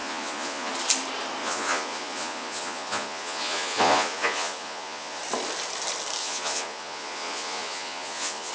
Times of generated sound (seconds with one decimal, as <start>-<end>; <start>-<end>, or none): 0.0-0.7; 1.4-5.2; 6.2-8.5